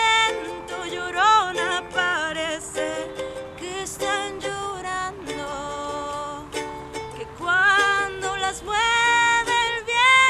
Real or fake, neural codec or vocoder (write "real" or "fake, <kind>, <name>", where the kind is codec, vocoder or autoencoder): real